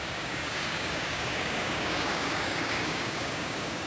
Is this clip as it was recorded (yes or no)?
no